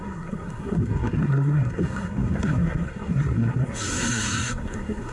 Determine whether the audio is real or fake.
fake